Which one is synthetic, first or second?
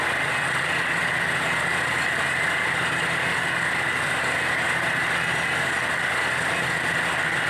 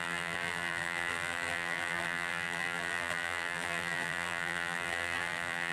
second